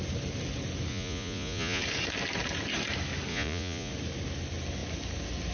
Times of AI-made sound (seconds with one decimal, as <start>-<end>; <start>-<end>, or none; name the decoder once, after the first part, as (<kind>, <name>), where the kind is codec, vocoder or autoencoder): 0.9-1.8 (vocoder, Vocos); 3.3-3.9